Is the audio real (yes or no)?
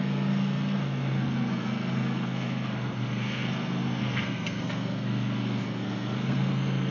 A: no